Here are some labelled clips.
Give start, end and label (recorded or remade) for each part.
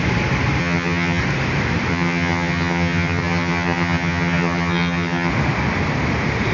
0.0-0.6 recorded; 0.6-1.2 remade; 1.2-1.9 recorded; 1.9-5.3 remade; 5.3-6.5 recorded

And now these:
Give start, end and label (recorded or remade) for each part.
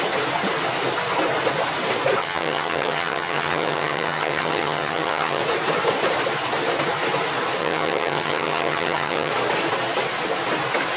0.0-2.2 recorded; 2.2-5.4 remade; 5.4-7.6 recorded; 7.6-9.3 remade; 9.3-11.0 recorded